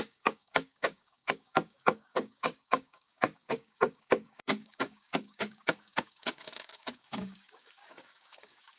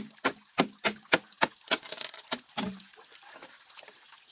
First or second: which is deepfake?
first